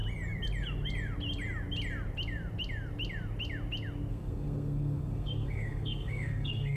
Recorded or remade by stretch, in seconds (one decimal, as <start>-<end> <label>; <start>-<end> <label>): 0.0-4.1 recorded; 4.1-6.8 remade